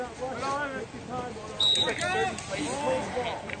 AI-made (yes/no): no